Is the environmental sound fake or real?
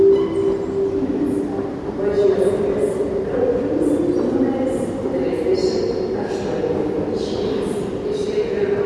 real